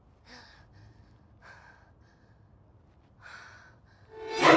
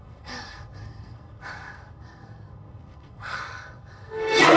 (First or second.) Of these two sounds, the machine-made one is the second